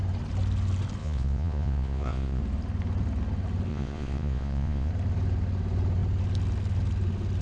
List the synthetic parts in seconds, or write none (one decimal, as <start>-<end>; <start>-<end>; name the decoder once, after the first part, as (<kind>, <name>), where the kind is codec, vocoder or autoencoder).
1.0-2.4 (vocoder, Vocos); 3.7-4.9